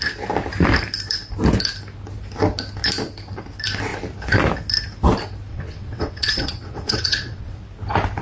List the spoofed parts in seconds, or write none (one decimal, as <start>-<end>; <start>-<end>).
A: 5.5-7.6